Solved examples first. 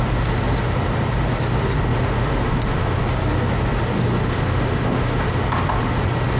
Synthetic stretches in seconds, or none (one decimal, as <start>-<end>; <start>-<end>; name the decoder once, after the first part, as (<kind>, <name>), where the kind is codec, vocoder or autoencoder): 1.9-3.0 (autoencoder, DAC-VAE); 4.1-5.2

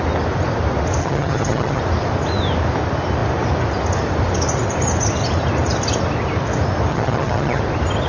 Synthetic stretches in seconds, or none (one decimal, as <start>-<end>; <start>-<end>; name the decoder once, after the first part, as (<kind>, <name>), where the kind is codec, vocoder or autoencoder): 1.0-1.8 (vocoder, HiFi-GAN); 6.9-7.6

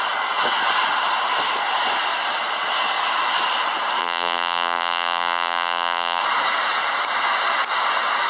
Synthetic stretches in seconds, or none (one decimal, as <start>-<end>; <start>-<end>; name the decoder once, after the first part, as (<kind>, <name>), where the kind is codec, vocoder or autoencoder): 4.0-6.2 (vocoder, BigVGAN v2)

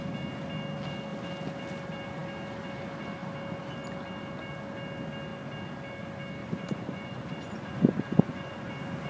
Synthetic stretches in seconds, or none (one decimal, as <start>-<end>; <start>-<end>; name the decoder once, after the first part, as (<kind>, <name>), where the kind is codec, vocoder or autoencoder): 6.4-8.7 (vocoder, Vocos)